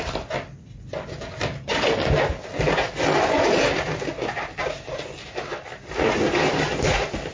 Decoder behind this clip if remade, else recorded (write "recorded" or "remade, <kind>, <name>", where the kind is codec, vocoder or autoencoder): recorded